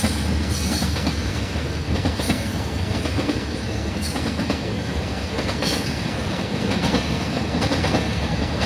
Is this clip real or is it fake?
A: fake